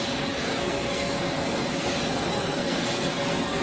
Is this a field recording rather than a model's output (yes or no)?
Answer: no